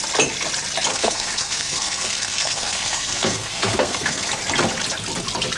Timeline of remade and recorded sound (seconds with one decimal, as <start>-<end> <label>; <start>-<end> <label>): 0.0-0.9 recorded; 0.9-4.3 remade; 4.3-5.6 recorded